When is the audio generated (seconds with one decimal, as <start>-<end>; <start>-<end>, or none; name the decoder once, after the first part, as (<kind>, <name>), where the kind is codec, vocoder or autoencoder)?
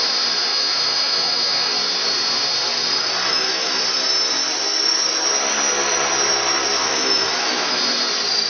0.5-1.7 (autoencoder, DAC-VAE); 3.3-3.8; 6.8-7.8